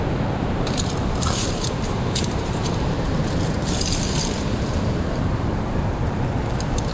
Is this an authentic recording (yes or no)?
no